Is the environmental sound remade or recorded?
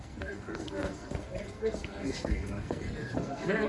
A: remade